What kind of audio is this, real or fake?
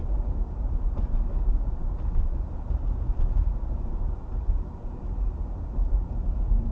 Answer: fake